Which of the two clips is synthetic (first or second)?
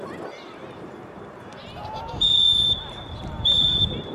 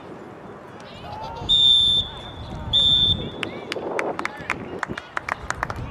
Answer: first